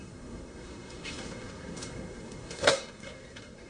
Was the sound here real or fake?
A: fake